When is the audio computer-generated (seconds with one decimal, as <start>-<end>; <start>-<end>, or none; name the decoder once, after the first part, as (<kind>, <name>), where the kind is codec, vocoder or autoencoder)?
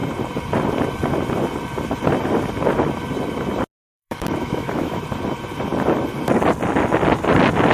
3.9-5.0 (autoencoder, DAC-VAE)